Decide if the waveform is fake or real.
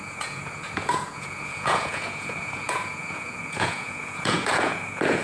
fake